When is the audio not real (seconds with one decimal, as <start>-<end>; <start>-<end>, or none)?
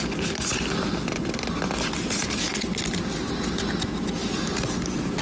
none